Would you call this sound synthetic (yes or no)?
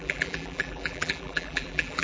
yes